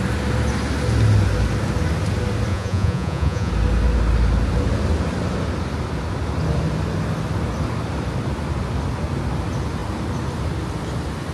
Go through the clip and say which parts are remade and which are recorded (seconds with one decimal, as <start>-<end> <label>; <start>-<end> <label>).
0.0-2.5 recorded; 2.5-3.5 remade; 3.5-11.3 recorded